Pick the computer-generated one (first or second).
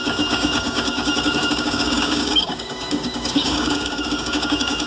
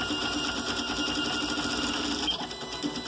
first